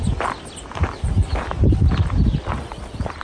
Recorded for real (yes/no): yes